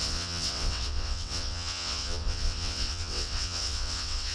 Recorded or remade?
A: remade